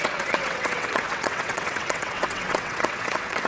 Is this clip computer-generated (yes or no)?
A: yes